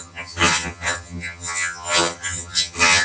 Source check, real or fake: fake